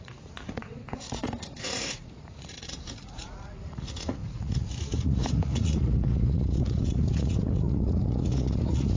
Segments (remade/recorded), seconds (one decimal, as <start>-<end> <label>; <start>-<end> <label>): 0.0-9.0 remade